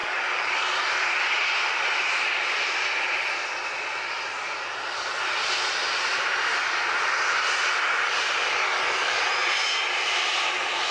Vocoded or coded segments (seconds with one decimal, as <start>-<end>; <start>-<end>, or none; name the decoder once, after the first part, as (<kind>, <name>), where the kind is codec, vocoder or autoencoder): 0.0-0.6 (codec, DAC); 8.4-9.2